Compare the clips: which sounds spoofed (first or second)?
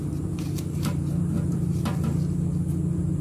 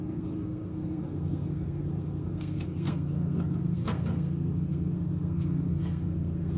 second